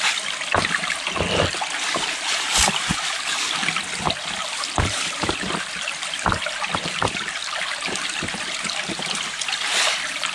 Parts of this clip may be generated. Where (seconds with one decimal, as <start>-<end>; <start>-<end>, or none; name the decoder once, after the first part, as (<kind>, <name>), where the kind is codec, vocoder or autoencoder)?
none